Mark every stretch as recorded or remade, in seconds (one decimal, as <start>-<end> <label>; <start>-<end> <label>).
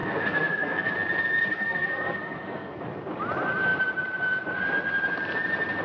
0.0-0.9 remade; 0.9-1.5 recorded; 1.5-2.8 remade; 2.8-5.8 recorded